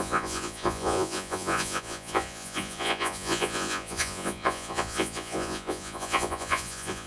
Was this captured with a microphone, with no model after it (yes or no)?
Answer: no